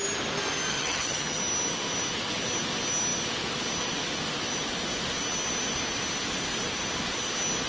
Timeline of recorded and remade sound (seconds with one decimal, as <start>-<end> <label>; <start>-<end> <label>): 0.0-0.7 recorded; 0.7-1.4 remade; 1.4-7.7 recorded